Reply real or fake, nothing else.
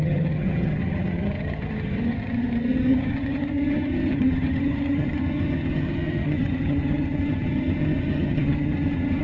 fake